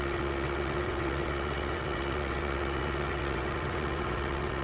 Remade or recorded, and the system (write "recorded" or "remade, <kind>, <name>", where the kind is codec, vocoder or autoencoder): remade, vocoder, WaveNeXt